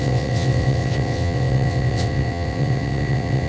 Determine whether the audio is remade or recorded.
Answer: remade